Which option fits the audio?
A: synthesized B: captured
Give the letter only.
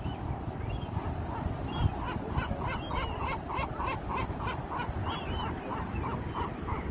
B